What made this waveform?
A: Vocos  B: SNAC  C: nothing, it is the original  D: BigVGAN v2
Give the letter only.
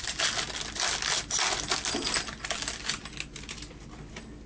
C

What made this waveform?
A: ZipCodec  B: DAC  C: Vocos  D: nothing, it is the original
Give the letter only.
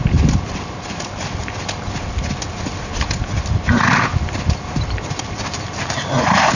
D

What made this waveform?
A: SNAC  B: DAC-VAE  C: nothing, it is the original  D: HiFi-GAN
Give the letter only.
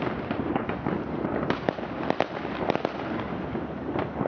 C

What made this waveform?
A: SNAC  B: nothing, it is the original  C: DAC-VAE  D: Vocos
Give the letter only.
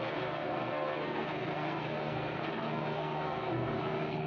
A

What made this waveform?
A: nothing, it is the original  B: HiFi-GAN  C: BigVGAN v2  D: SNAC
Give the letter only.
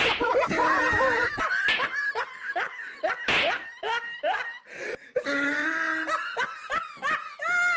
A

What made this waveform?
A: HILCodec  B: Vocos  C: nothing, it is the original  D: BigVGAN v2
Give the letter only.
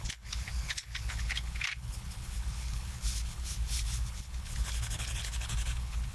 A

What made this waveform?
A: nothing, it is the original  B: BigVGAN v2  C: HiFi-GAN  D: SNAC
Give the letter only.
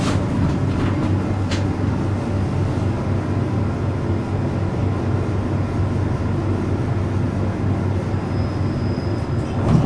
A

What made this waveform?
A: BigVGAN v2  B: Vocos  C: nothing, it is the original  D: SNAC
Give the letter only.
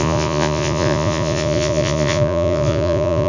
B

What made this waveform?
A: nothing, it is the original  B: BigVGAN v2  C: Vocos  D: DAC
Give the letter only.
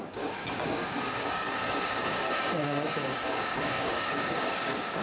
D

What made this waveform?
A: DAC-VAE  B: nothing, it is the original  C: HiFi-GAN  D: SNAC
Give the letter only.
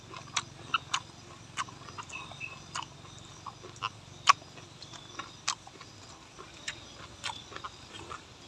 B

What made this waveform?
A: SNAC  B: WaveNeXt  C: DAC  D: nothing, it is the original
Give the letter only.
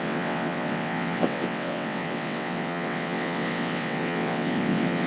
B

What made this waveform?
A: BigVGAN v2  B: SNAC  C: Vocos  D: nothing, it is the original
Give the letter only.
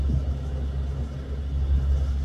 D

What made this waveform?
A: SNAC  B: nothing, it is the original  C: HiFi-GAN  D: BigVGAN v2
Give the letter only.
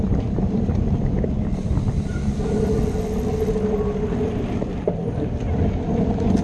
B